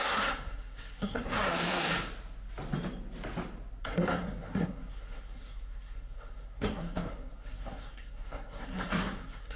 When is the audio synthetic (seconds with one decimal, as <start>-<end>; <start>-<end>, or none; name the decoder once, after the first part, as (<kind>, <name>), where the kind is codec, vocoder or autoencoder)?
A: 0.0-1.9 (codec, SNAC); 3.8-9.6